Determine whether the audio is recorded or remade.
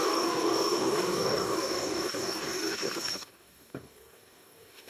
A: remade